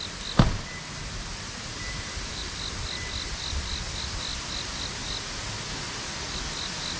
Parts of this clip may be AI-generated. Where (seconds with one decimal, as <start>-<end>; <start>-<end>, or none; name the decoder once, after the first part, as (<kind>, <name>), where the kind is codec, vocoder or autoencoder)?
1.7-2.5 (vocoder, BigVGAN v2)